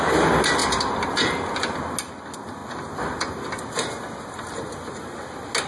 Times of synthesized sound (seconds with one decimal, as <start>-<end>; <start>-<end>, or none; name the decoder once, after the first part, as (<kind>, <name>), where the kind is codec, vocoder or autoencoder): none